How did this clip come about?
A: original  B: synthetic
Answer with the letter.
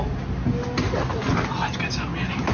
A